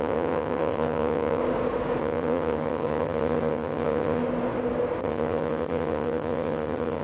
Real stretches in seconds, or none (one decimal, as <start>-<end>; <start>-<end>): 1.4-2.0; 4.2-5.0